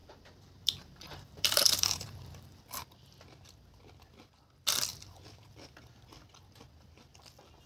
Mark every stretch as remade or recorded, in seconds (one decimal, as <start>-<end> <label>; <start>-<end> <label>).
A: 0.0-2.6 remade; 2.6-7.7 recorded